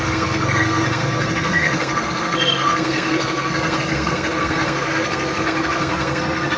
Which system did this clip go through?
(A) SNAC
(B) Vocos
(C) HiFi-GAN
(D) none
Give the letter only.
A